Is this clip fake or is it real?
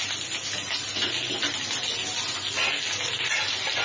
real